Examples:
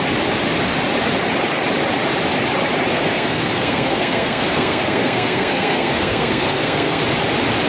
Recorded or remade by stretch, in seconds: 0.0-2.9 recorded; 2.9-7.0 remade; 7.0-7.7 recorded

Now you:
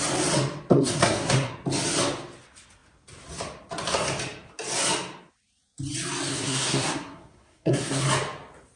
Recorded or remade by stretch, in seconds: 0.0-0.7 recorded; 0.7-1.5 remade; 1.5-6.3 recorded; 6.3-8.0 remade; 8.0-8.8 recorded

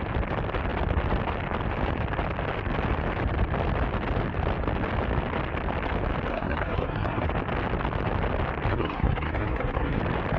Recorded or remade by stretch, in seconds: 0.0-6.3 recorded; 6.3-7.3 remade; 7.3-8.7 recorded; 8.7-10.0 remade; 10.0-10.4 recorded

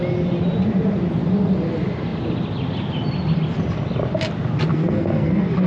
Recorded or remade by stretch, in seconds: 0.0-4.7 recorded; 4.7-5.7 remade

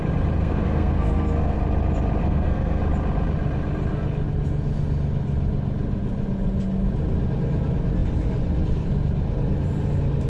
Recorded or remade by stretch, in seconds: 0.0-0.4 recorded; 0.4-1.6 remade; 1.6-2.2 recorded; 2.2-2.8 remade; 2.8-10.3 recorded

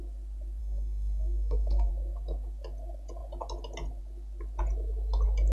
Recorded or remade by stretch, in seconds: 0.0-0.6 recorded; 0.6-1.9 remade; 1.9-5.5 recorded